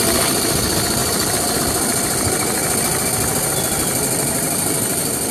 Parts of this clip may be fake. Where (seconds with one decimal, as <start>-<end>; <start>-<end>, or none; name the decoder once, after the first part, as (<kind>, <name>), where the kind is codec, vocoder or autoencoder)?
0.0-2.6 (vocoder, BigVGAN v2); 3.5-5.3

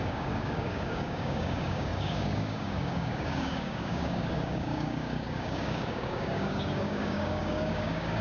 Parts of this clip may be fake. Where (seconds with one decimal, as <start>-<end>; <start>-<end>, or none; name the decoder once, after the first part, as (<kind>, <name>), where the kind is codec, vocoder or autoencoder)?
0.0-8.2 (codec, DAC)